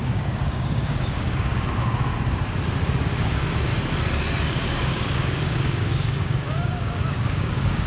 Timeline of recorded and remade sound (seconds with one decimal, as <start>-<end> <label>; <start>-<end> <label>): 0.0-2.1 remade; 2.1-3.2 recorded; 3.2-3.7 remade; 3.7-4.4 recorded; 4.4-7.9 remade